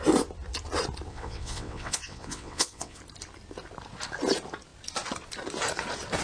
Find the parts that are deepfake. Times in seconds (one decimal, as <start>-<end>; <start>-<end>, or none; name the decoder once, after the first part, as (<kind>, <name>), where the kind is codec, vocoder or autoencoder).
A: 1.1-3.0 (vocoder, WaveNeXt)